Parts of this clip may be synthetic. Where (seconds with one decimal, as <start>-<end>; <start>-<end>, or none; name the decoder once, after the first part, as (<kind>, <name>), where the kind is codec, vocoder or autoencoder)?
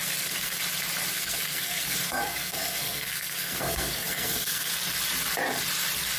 0.0-0.6 (codec, SNAC); 1.1-4.7